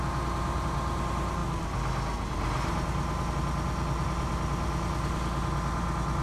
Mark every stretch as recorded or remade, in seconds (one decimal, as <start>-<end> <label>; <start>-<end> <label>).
0.0-6.2 recorded